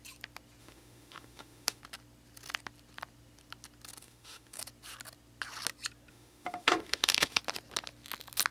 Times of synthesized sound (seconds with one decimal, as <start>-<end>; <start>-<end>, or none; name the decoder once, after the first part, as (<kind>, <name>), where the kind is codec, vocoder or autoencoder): 0.6-1.8 (autoencoder, DAC-VAE); 4.0-4.6; 6.1-7.4